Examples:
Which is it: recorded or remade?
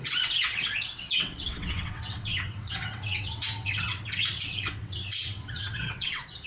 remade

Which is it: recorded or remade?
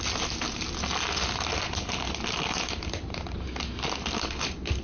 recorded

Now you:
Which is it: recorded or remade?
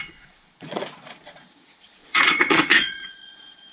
remade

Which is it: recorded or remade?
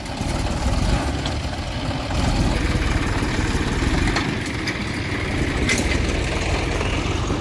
remade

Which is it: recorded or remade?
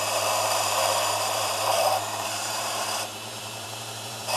remade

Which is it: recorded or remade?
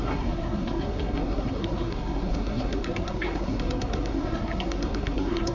remade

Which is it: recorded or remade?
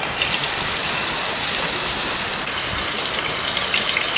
recorded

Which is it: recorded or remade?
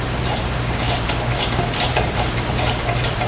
remade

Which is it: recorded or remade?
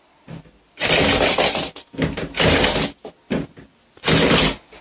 recorded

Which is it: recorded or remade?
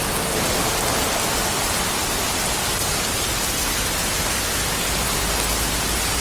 recorded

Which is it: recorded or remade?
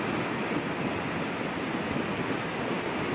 recorded